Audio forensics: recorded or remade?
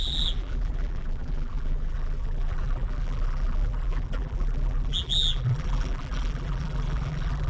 remade